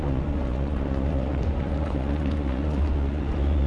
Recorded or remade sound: remade